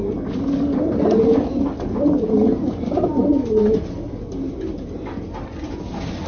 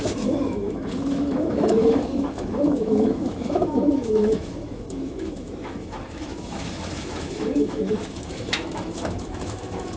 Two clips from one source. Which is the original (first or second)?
first